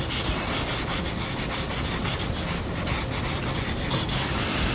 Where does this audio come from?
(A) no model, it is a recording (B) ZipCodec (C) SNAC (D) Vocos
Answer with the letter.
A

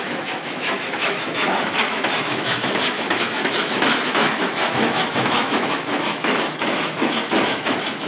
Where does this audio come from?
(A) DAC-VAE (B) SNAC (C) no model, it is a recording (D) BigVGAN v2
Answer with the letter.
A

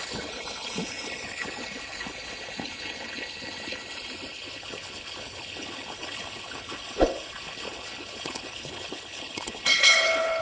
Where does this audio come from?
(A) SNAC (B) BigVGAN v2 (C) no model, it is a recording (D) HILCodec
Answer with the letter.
D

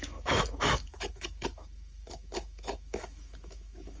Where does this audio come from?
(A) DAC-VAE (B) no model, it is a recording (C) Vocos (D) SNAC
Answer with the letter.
A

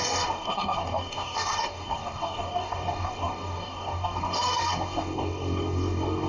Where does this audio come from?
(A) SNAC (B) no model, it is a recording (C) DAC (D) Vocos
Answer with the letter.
C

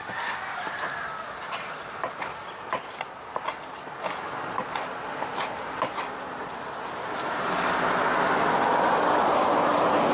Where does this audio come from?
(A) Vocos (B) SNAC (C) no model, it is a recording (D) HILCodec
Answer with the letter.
C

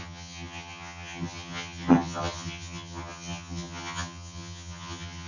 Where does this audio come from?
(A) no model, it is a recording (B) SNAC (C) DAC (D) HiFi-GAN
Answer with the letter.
D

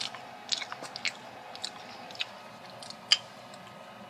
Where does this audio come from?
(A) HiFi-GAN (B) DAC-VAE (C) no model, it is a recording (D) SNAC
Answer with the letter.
C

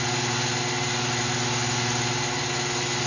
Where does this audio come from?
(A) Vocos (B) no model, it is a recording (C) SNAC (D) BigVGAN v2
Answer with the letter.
B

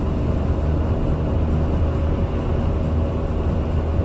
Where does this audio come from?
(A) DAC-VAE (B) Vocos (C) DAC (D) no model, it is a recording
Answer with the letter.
D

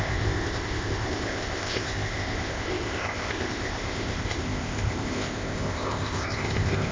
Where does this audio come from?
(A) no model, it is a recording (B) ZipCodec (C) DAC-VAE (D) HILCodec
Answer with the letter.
B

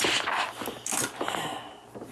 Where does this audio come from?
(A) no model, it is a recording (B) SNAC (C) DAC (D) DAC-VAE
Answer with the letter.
A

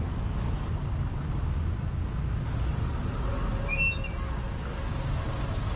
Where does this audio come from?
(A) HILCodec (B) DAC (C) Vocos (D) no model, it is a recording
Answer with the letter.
D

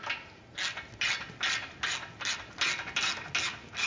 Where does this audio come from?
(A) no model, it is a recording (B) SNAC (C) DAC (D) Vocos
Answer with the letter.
A